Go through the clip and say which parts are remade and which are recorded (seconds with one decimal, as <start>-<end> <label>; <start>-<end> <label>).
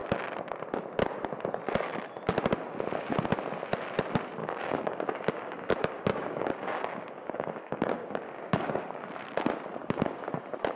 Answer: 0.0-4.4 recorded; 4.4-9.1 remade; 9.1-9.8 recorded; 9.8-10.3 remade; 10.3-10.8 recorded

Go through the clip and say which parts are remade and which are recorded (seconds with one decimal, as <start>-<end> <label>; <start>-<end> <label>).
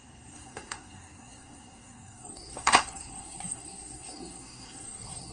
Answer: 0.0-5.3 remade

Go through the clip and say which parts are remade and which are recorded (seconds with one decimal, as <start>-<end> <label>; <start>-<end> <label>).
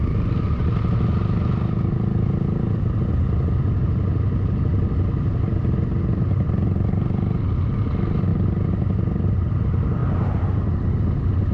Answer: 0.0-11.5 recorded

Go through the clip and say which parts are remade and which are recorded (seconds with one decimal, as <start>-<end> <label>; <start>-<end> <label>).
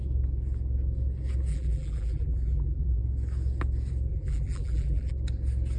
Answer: 0.0-1.5 recorded; 1.5-3.0 remade; 3.0-4.1 recorded; 4.1-5.1 remade; 5.1-5.8 recorded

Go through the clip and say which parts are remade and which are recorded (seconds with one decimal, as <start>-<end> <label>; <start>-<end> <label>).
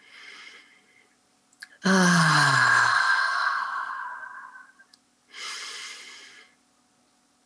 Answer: 0.0-2.7 recorded; 2.7-3.9 remade; 3.9-7.5 recorded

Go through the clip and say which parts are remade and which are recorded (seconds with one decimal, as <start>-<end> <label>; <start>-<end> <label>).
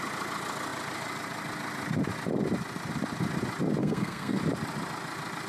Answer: 0.0-3.8 recorded; 3.8-4.4 remade; 4.4-5.5 recorded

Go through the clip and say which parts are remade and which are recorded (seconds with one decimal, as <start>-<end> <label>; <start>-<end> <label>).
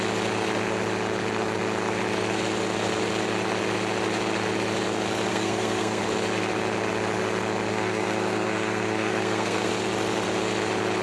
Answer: 0.0-5.3 recorded; 5.3-6.0 remade; 6.0-7.7 recorded; 7.7-9.7 remade; 9.7-11.0 recorded